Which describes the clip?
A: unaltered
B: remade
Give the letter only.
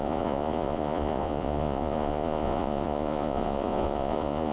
B